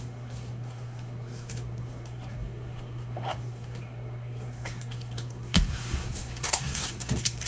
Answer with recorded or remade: remade